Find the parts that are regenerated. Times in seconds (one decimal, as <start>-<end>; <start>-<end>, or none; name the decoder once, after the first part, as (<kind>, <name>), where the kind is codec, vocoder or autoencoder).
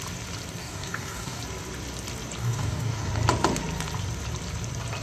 0.6-1.4 (codec, DAC); 2.4-3.1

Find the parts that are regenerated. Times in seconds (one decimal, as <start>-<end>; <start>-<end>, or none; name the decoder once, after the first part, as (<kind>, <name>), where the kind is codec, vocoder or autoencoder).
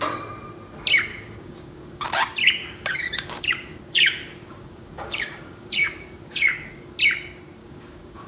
1.1-2.1 (codec, DAC); 2.6-7.0; 7.6-8.3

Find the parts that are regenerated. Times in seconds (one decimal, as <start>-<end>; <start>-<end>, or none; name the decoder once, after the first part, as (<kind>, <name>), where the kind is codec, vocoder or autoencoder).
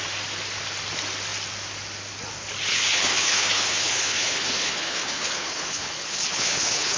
2.7-7.0 (codec, HILCodec)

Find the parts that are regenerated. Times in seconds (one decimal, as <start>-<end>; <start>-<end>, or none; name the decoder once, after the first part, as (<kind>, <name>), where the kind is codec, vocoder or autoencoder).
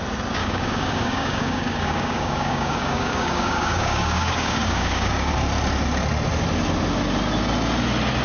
0.4-5.3 (codec, DAC)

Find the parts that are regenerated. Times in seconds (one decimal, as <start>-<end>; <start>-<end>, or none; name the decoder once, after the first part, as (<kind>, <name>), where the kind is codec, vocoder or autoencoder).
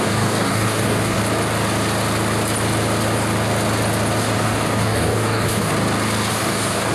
0.0-1.2 (codec, DAC); 4.2-5.7; 6.3-6.9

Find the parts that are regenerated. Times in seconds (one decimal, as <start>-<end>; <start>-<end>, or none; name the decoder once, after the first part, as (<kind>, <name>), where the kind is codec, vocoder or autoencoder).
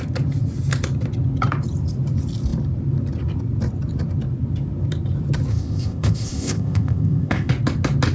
5.5-7.5 (codec, ZipCodec)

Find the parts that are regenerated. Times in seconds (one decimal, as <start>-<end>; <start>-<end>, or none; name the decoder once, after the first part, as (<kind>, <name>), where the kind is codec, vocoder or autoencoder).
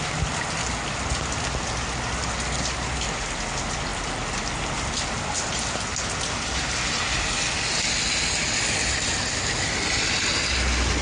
none